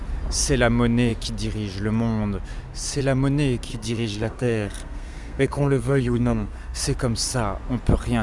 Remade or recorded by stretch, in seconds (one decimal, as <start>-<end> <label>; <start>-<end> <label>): 0.0-3.7 recorded; 3.7-6.8 remade; 6.8-8.2 recorded